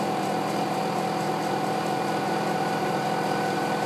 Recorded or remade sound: remade